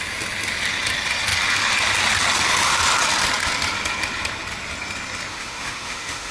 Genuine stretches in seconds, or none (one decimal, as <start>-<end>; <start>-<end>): 0.0-5.3